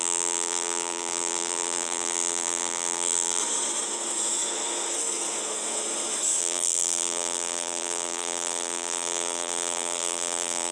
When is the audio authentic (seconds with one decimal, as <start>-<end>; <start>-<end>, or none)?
3.4-6.4